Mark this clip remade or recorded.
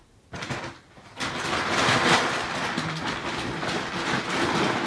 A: recorded